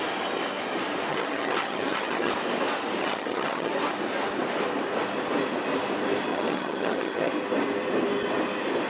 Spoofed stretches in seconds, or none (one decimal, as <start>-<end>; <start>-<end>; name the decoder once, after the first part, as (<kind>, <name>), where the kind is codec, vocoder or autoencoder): 1.1-2.3 (vocoder, HiFi-GAN); 3.0-3.7; 6.3-7.3